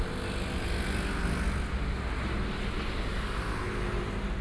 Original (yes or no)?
yes